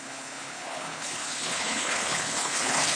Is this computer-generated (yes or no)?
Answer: yes